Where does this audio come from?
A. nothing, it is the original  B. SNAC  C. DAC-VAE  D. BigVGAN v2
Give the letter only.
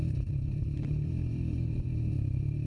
D